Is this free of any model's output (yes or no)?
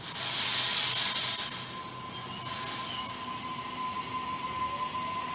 yes